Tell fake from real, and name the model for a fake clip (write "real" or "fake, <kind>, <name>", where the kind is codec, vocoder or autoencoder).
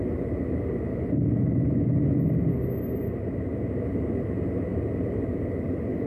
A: real